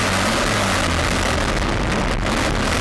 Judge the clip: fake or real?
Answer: real